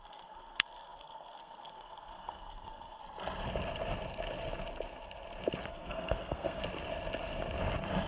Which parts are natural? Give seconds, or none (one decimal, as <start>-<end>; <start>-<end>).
3.0-5.7; 6.6-8.1